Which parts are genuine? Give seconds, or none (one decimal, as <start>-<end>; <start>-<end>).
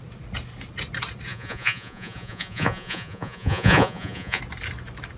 0.0-1.3; 4.4-5.2